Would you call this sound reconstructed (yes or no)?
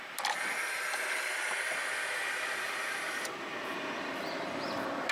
no